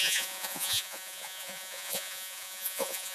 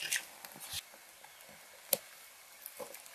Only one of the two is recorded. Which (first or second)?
second